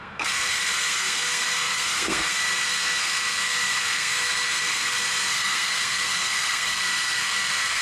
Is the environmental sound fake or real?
fake